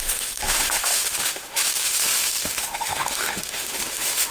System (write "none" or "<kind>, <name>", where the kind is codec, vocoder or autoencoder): autoencoder, DAC-VAE